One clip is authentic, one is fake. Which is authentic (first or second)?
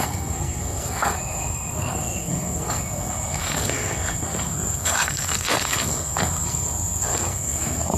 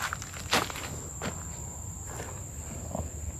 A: second